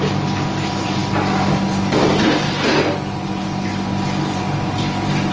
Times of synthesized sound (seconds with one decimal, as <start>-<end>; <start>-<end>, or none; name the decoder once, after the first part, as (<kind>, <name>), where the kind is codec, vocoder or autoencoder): none